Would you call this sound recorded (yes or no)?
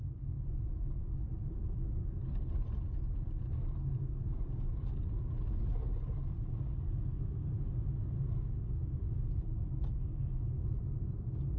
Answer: yes